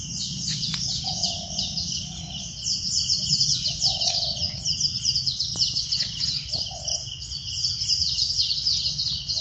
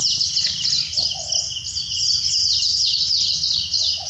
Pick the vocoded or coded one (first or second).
first